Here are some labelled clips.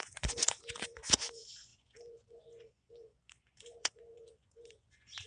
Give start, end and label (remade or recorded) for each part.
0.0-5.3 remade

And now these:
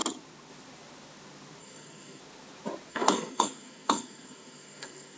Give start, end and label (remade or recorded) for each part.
0.0-1.6 recorded; 1.6-2.2 remade; 2.2-2.9 recorded; 2.9-5.2 remade